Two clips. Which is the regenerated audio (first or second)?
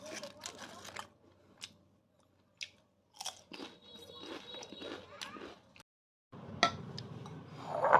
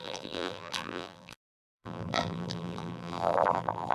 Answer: second